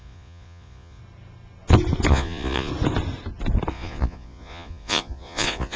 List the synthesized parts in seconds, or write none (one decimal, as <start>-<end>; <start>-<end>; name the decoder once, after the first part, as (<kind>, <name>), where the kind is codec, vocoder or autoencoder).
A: 0.0-1.0 (vocoder, Vocos); 2.1-2.7; 3.7-5.8